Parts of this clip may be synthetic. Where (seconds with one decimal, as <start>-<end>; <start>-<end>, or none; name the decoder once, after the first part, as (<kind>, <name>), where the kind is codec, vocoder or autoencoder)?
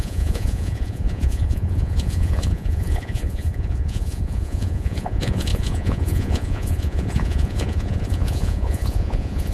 0.0-9.5 (vocoder, Vocos)